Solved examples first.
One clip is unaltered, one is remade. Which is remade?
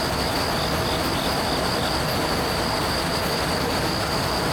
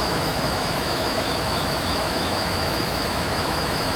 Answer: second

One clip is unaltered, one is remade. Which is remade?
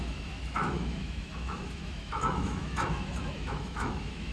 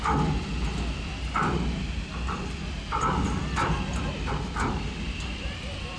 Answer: first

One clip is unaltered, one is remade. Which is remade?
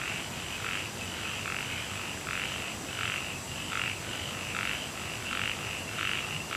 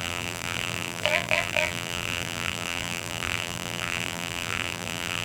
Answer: second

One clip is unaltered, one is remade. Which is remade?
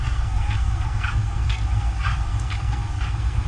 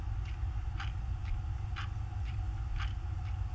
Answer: first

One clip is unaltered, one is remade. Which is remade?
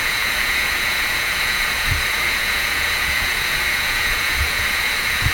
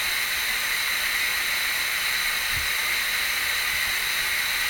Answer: first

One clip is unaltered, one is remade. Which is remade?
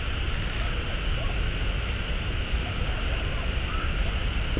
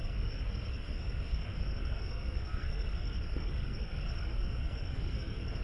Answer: second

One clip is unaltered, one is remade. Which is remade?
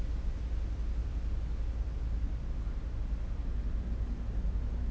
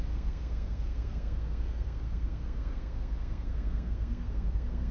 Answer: second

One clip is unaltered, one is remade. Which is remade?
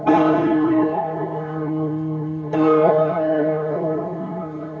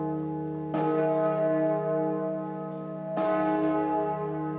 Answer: first